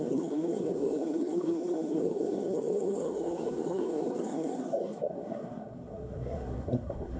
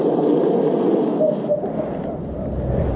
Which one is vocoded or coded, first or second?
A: first